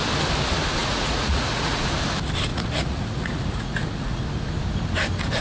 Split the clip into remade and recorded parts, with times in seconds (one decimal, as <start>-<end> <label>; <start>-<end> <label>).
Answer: 0.0-0.8 recorded; 0.8-1.9 remade; 1.9-2.5 recorded; 2.5-4.2 remade; 4.2-5.4 recorded